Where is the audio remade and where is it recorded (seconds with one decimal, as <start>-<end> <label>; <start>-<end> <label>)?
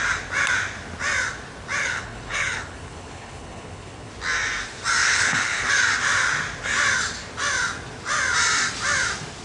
0.0-1.8 recorded; 1.8-4.1 remade; 4.1-5.0 recorded; 5.0-5.7 remade; 5.7-9.4 recorded